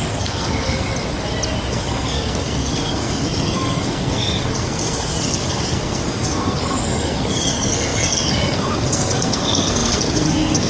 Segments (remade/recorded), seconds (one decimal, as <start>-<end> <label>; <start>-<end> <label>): 0.0-0.9 remade; 0.9-1.7 recorded; 1.7-10.7 remade